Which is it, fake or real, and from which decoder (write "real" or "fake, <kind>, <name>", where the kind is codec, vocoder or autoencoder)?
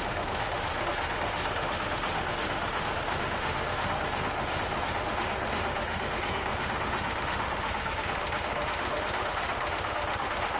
fake, autoencoder, DAC-VAE